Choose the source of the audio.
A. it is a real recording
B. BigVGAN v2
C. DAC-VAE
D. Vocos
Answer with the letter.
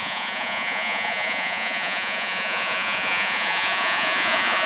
D